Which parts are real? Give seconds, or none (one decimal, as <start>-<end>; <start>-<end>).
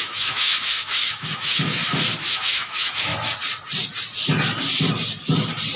1.8-2.3; 3.1-5.8